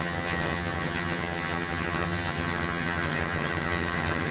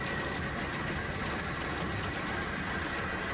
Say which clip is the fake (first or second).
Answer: first